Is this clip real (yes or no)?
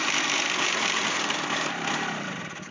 no